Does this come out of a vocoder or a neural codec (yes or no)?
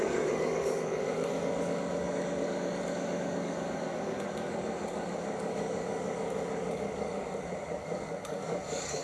yes